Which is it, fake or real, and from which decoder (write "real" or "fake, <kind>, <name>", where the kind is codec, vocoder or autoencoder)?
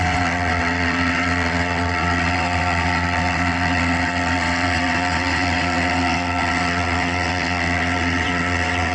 fake, vocoder, WaveNeXt